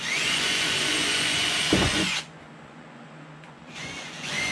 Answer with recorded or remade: remade